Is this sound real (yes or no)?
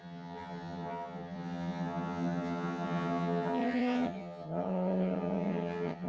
no